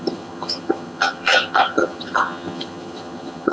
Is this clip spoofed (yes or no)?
yes